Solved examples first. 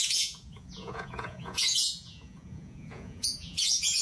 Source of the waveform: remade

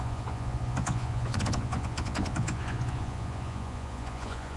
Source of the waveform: remade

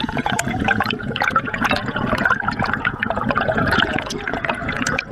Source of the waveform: remade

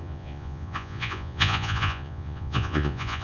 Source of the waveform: remade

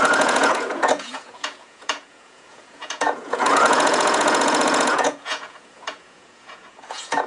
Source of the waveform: remade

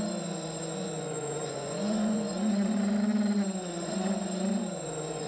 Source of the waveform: remade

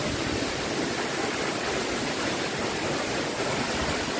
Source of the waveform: recorded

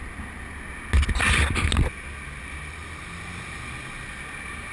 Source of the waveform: recorded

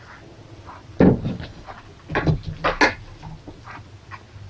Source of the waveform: recorded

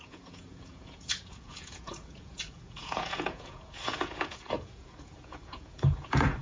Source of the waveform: remade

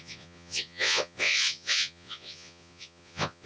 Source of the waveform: remade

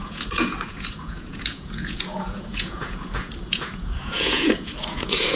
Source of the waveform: remade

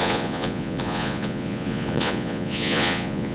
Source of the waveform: remade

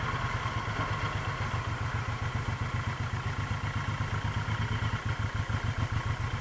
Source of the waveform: recorded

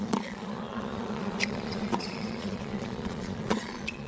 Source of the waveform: remade